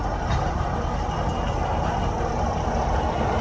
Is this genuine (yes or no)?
yes